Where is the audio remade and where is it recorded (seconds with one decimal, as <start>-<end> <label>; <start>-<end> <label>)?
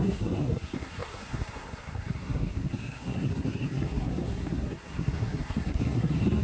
0.0-6.4 remade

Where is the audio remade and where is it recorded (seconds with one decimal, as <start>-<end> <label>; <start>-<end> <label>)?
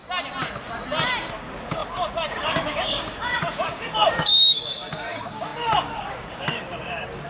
0.0-1.3 recorded; 1.3-7.3 remade